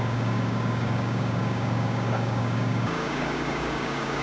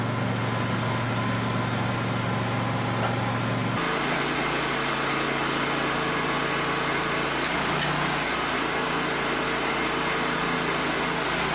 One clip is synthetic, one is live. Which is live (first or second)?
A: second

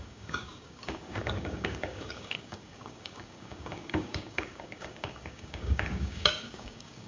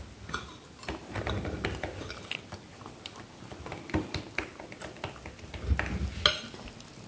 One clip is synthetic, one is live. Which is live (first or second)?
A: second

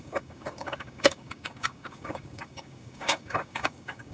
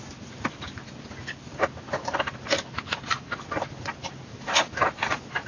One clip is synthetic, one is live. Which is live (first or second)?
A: second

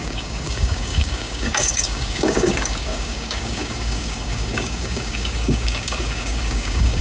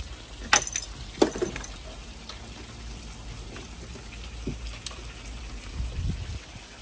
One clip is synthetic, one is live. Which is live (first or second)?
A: second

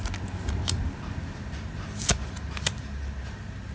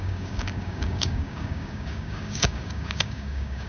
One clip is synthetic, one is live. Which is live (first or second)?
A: first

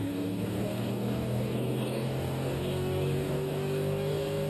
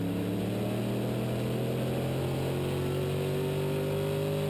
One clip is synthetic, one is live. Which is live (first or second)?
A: second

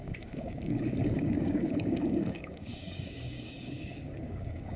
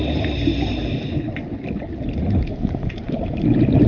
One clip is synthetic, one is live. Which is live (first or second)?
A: second